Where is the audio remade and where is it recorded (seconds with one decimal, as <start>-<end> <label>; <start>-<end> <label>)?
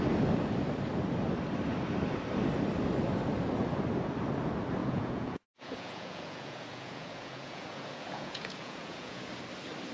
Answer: 0.0-4.8 recorded; 4.8-9.3 remade; 9.3-9.9 recorded